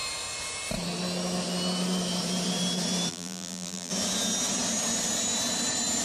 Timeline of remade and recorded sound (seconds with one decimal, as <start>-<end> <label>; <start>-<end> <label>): 0.0-3.1 recorded; 3.1-3.9 remade; 3.9-6.0 recorded